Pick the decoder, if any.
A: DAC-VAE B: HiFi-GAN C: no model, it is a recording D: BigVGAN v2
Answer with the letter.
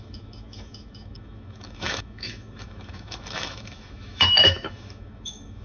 A